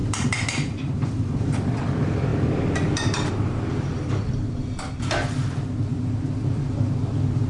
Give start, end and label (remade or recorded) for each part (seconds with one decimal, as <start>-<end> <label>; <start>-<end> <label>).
0.0-7.5 remade